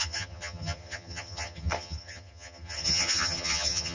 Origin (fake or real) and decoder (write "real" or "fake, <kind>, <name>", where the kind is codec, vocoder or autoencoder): fake, vocoder, HiFi-GAN